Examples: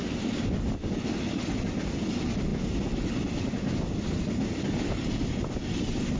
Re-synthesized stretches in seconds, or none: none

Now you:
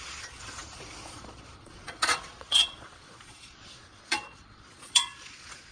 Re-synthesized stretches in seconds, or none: 0.0-5.7 (vocoder, Vocos)